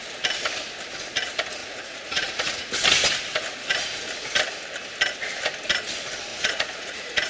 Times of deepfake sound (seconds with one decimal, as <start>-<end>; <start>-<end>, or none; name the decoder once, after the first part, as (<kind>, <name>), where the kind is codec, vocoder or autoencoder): 1.6-2.7 (vocoder, Vocos); 6.3-7.3